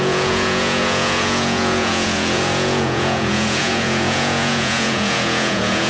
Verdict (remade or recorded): remade